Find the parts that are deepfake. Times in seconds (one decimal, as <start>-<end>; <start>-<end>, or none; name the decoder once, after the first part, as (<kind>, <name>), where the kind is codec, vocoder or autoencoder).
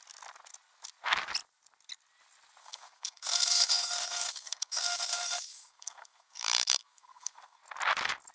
2.6-7.6 (codec, SNAC)